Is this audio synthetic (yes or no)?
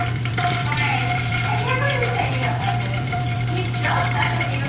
yes